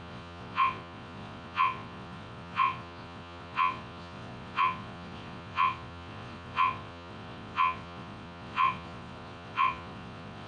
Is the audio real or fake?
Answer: fake